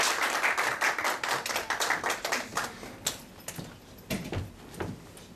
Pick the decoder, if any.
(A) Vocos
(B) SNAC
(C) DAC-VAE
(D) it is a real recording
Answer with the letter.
D